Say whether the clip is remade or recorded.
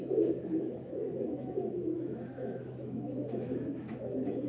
remade